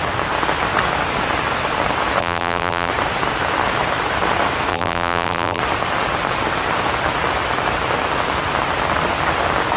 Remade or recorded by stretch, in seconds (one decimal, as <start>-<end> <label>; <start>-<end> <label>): 0.0-2.2 recorded; 2.2-2.9 remade; 2.9-4.7 recorded; 4.7-5.6 remade; 5.6-9.8 recorded